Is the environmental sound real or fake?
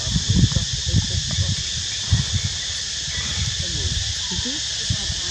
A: fake